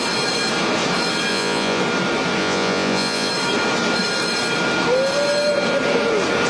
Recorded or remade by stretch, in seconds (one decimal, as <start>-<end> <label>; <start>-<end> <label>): 0.0-1.3 recorded; 1.3-1.8 remade; 1.8-2.4 recorded; 2.4-3.3 remade; 3.3-6.5 recorded